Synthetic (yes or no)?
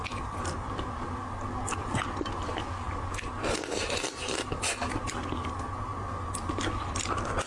no